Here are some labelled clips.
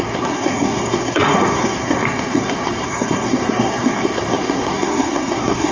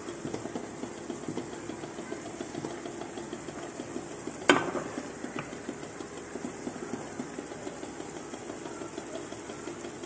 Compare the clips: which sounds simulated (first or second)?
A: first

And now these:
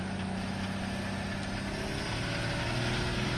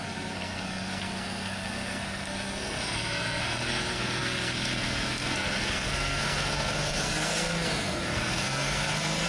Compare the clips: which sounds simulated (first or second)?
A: second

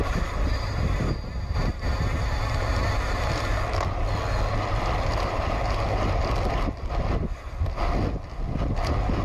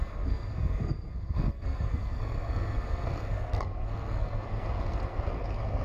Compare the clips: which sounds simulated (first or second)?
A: second